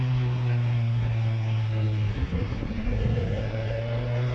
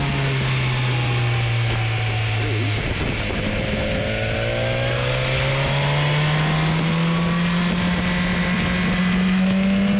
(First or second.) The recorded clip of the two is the second